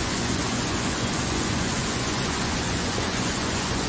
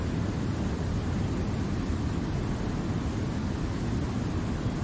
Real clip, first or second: second